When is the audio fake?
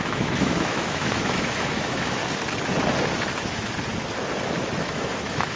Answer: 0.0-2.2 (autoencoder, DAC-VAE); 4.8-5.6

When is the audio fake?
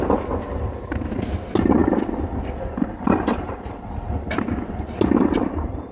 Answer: none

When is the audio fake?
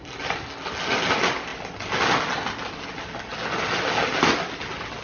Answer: none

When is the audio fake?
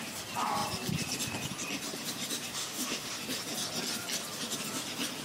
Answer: 2.6-3.1 (autoencoder, DAC-VAE)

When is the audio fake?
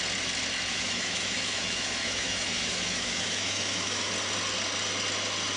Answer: 0.7-4.1 (autoencoder, DAC-VAE)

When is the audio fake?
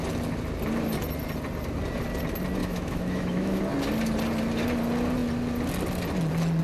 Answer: 2.6-3.6 (autoencoder, DAC-VAE)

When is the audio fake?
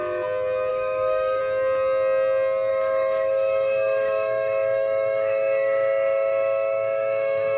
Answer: 0.7-1.4 (autoencoder, DAC-VAE); 2.7-7.6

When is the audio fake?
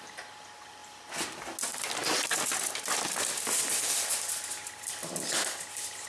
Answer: none